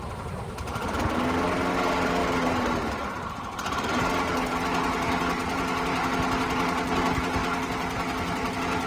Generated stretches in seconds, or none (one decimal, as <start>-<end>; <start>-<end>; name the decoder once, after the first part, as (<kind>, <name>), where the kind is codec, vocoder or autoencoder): 2.2-4.0 (vocoder, BigVGAN v2); 5.4-6.0